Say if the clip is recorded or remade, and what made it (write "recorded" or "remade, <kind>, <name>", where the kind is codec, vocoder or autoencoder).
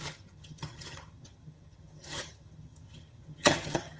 remade, vocoder, HiFi-GAN